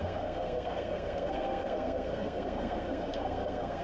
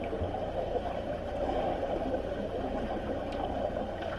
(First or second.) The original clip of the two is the second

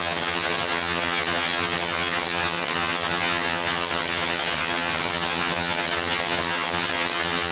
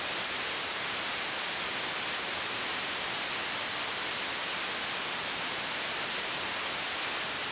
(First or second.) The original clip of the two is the second